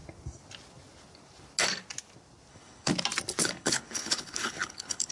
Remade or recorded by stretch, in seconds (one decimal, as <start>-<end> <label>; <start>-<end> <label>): 0.0-2.5 recorded; 2.5-2.9 remade; 2.9-3.4 recorded; 3.4-5.1 remade

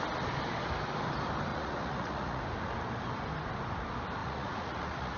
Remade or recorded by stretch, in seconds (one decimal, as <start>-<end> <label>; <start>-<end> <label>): 0.0-1.5 recorded; 1.5-2.4 remade; 2.4-4.2 recorded; 4.2-5.2 remade

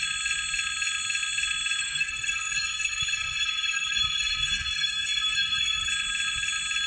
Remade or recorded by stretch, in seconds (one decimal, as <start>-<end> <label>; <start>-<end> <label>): 0.0-1.8 recorded; 1.8-5.9 remade; 5.9-6.9 recorded

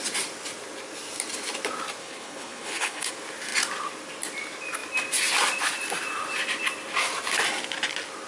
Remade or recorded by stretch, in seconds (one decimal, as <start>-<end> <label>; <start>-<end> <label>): 0.0-2.0 recorded; 2.0-3.1 remade; 3.1-8.3 recorded

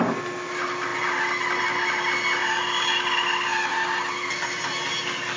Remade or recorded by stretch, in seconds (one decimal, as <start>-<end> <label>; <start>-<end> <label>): 0.0-5.4 recorded

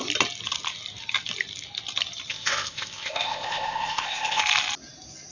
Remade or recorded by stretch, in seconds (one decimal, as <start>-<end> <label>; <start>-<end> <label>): 0.0-2.3 recorded; 2.3-4.4 remade; 4.4-5.3 recorded